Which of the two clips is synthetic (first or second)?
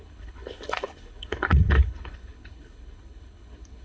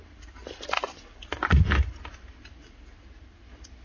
first